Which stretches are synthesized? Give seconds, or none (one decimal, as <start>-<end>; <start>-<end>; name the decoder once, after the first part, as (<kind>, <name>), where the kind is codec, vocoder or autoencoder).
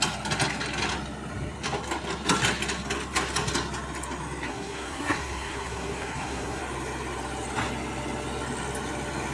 4.5-6.6 (codec, SNAC)